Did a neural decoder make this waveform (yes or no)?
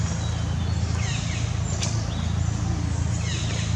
no